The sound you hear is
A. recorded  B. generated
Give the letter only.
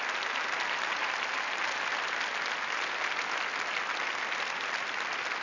A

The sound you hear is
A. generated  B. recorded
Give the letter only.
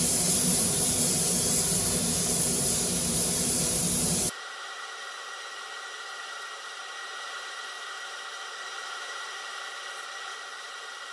A